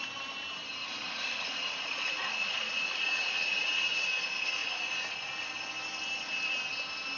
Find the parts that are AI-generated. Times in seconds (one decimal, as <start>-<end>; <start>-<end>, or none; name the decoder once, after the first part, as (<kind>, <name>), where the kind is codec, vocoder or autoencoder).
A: 0.8-4.1 (vocoder, Vocos); 4.6-5.5